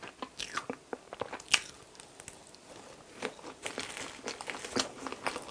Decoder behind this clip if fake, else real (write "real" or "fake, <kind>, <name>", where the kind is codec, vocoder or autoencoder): real